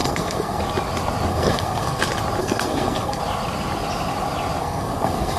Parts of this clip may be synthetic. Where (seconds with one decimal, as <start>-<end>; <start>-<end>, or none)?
0.0-0.6; 1.3-2.0; 2.4-3.2; 4.6-5.4